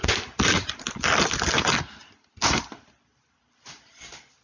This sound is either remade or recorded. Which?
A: recorded